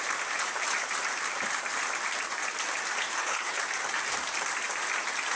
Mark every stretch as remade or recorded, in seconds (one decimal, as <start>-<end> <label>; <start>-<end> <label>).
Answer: 0.0-3.1 recorded; 3.1-3.6 remade; 3.6-5.4 recorded